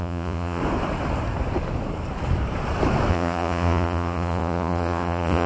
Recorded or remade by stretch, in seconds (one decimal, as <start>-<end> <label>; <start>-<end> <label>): 0.0-0.6 remade; 0.6-3.1 recorded; 3.1-5.5 remade